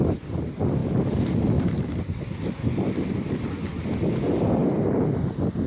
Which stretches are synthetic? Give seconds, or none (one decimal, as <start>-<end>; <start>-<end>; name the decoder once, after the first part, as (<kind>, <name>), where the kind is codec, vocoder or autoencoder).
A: 0.0-0.8 (vocoder, BigVGAN v2); 3.5-4.6